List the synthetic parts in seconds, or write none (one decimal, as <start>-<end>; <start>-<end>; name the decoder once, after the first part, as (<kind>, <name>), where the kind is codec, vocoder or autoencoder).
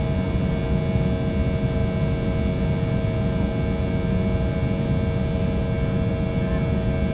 none